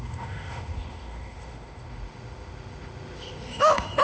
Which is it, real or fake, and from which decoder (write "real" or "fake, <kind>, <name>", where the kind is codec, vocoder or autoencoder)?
fake, autoencoder, DAC-VAE